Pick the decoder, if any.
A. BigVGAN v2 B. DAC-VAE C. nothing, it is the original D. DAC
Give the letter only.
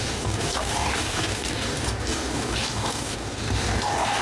D